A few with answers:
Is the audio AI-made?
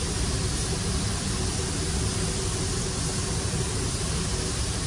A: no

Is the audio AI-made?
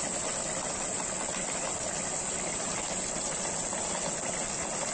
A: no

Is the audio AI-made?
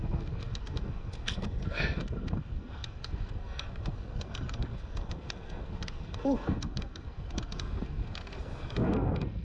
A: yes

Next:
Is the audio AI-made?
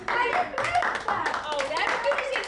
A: no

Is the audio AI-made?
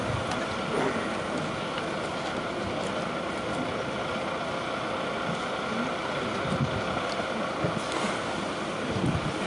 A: no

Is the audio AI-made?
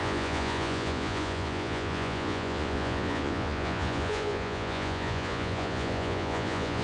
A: yes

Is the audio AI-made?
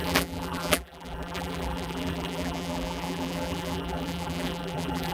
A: yes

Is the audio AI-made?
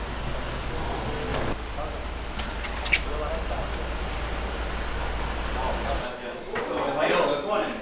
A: no